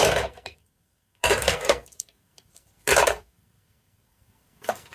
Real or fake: fake